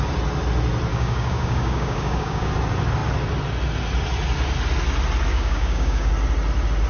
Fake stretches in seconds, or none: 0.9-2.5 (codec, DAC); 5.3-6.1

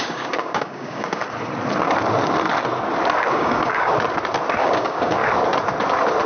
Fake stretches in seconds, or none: 0.0-1.2 (codec, DAC); 3.3-3.9; 4.6-5.2

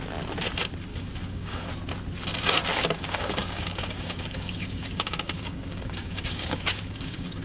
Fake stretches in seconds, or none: 0.9-1.7 (codec, DAC); 2.7-7.4

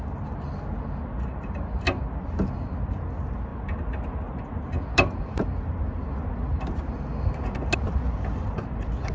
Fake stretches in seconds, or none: none

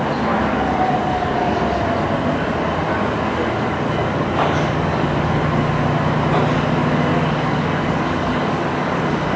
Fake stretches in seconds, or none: 0.5-1.6 (codec, DAC); 2.9-5.4; 7.1-9.0